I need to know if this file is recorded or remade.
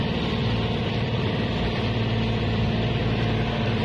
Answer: remade